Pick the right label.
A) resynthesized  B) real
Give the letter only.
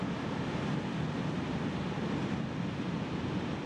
A